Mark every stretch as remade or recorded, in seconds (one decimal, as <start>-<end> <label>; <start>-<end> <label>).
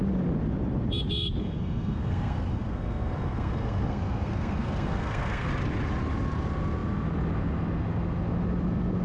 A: 0.0-1.4 recorded; 1.4-5.5 remade; 5.5-9.0 recorded